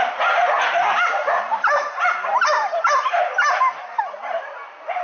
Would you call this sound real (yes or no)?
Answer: yes